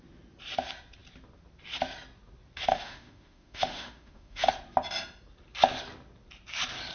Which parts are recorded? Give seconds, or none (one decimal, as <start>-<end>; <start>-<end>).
0.0-2.7; 4.5-6.9